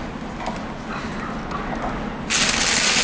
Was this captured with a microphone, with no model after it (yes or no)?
yes